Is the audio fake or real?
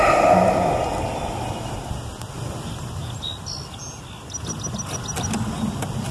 real